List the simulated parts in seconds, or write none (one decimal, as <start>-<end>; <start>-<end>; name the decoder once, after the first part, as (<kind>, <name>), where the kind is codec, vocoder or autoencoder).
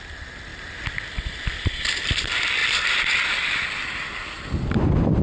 0.0-0.5 (vocoder, BigVGAN v2); 1.5-5.2